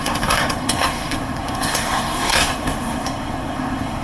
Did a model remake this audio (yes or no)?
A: yes